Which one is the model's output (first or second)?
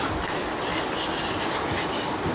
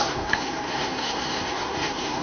second